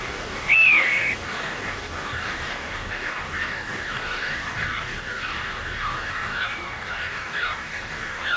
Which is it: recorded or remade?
remade